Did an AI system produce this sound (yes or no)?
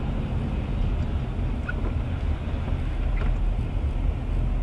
no